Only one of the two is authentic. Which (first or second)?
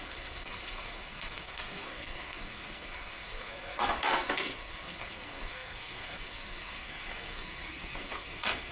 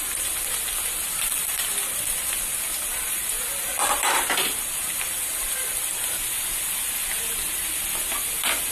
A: second